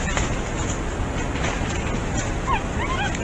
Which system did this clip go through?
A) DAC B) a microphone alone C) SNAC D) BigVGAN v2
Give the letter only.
B